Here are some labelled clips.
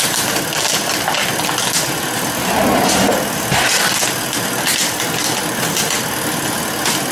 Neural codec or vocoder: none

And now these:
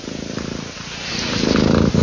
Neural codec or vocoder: none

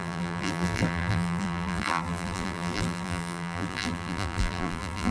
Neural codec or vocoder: vocoder, BigVGAN v2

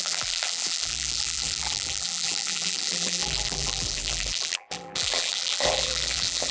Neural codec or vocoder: vocoder, BigVGAN v2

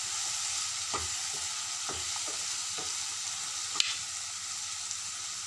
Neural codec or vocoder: none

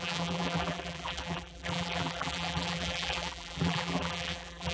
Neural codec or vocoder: vocoder, BigVGAN v2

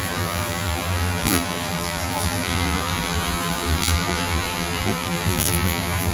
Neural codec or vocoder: vocoder, BigVGAN v2